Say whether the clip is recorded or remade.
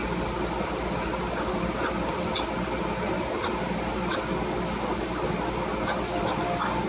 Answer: recorded